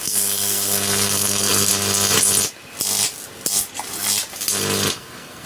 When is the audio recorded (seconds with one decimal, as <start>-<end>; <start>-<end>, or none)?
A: 1.7-4.9